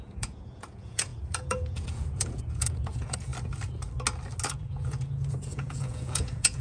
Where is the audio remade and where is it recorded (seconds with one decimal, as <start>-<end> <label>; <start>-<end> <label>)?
0.0-3.3 remade; 3.3-4.5 recorded; 4.5-6.6 remade